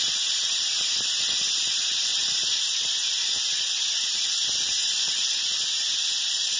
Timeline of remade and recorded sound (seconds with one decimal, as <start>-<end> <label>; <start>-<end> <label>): 0.0-6.6 recorded